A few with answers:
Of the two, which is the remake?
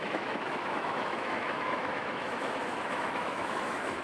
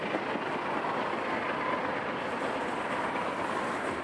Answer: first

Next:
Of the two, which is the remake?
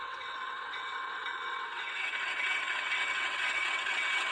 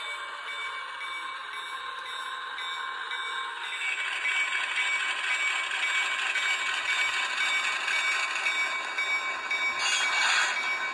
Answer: first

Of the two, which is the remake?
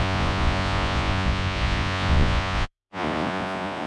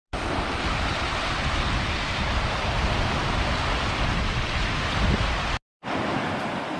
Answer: first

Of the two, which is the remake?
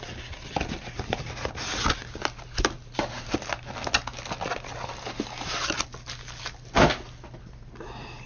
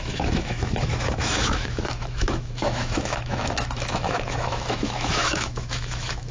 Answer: second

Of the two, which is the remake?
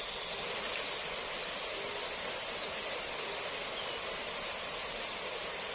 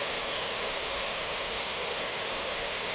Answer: second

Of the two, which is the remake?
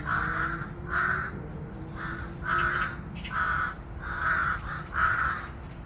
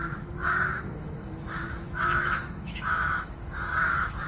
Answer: second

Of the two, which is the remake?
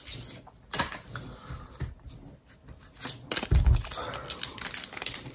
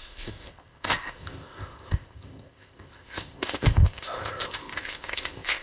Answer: second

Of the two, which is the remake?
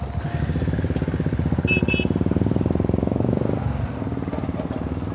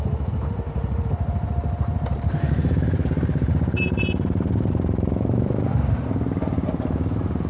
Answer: second